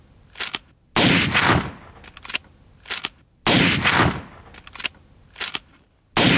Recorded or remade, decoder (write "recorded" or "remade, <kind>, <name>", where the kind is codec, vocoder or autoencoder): recorded